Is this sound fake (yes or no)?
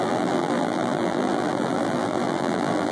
yes